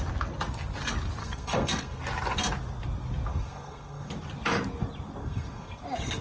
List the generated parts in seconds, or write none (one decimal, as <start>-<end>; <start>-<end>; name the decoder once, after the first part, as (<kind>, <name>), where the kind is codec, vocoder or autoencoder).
1.2-2.0 (codec, SNAC); 3.3-4.1; 5.2-5.8